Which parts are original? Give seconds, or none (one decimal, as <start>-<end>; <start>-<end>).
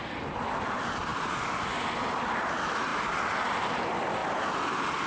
0.0-5.1